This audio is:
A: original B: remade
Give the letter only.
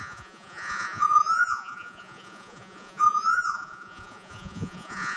B